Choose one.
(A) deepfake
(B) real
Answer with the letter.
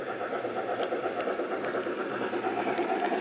B